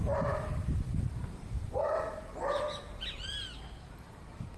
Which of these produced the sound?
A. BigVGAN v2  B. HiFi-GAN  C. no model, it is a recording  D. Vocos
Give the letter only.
C